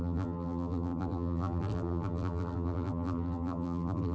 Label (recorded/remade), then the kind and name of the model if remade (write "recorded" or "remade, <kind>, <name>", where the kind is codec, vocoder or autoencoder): remade, vocoder, BigVGAN v2